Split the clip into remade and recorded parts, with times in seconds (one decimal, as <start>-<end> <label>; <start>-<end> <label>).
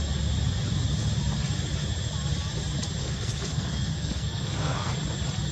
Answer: 0.0-3.0 recorded; 3.0-4.9 remade; 4.9-5.5 recorded